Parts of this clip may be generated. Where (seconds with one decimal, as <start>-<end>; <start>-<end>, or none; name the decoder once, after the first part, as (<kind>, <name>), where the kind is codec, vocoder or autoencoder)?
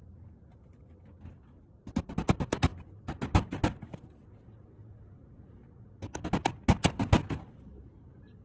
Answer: none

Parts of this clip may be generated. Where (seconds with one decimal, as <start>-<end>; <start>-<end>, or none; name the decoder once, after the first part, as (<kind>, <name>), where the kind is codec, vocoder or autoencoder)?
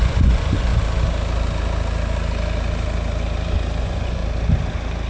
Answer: 0.0-0.7 (vocoder, Vocos); 3.8-4.2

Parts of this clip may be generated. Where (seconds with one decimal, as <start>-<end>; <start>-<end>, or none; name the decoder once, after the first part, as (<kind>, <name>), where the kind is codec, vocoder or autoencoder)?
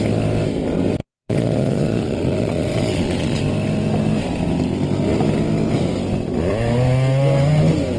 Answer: 1.0-3.4 (vocoder, Vocos)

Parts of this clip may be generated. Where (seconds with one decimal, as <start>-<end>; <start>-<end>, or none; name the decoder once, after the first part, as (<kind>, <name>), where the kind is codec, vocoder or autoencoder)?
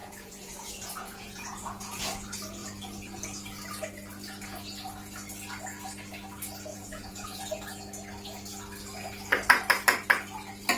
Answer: 0.0-2.0 (vocoder, Vocos); 6.7-7.4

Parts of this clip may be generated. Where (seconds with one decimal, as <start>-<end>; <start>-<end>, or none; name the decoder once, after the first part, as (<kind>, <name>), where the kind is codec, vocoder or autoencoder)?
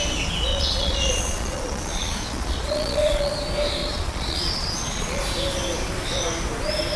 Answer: 0.5-3.3 (vocoder, Vocos); 3.8-5.2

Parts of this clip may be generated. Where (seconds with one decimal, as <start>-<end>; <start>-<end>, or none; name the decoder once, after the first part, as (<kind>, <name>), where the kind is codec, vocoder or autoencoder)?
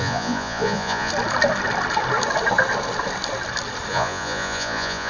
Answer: 0.0-1.1 (vocoder, Vocos); 3.9-5.1